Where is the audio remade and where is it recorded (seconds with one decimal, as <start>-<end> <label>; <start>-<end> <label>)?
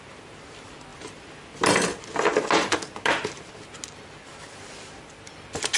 0.0-5.8 recorded